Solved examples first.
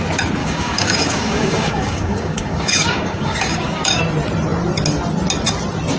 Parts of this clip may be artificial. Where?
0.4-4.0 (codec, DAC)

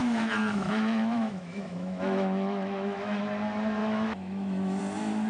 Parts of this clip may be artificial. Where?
0.0-3.2 (autoencoder, DAC-VAE); 3.8-4.8

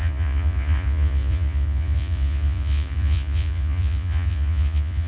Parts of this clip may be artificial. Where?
0.0-5.1 (vocoder, Vocos)

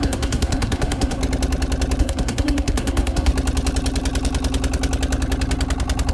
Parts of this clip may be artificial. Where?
0.0-1.2 (codec, SNAC); 2.0-3.3

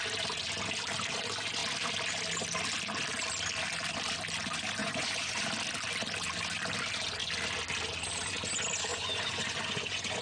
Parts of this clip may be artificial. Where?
4.8-5.5 (vocoder, Vocos); 8.9-10.2

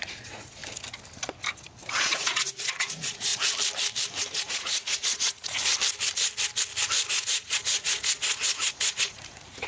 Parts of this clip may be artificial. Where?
0.0-0.6 (vocoder, Vocos); 1.9-3.3; 4.3-5.7; 7.1-9.7

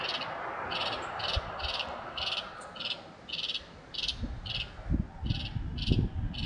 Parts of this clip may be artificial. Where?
0.8-2.5 (vocoder, BigVGAN v2)

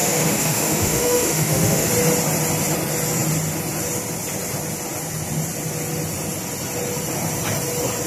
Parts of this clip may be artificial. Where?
0.0-1.9 (autoencoder, DAC-VAE)